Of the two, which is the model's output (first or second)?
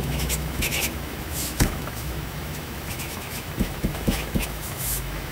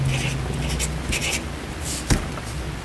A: first